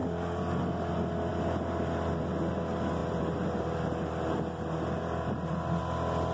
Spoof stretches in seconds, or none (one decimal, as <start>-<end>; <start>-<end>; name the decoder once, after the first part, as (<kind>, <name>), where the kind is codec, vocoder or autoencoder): 3.0-5.8 (vocoder, BigVGAN v2)